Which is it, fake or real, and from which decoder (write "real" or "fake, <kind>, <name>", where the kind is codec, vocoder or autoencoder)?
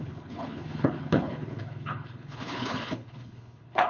fake, codec, HILCodec